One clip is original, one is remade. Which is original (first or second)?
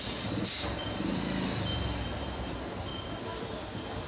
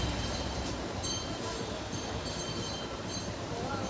first